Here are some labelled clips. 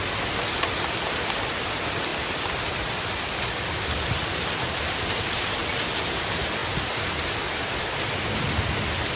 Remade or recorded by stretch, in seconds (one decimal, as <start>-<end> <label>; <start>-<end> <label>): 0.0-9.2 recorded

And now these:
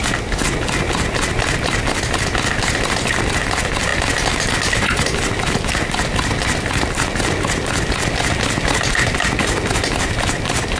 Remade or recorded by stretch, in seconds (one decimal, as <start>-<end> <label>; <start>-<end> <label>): 0.0-10.8 recorded

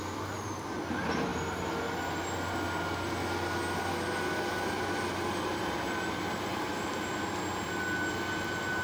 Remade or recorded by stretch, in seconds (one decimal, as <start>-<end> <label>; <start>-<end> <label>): 0.0-6.5 recorded; 6.5-7.4 remade; 7.4-8.8 recorded

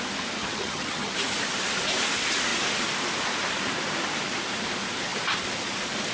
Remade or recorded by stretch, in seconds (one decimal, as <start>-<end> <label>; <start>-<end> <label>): 0.0-0.4 recorded; 0.4-1.1 remade; 1.1-6.1 recorded

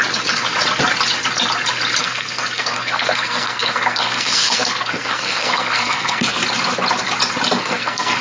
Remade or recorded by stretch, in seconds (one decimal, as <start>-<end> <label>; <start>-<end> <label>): 0.0-2.0 recorded; 2.0-6.4 remade; 6.4-7.6 recorded; 7.6-8.2 remade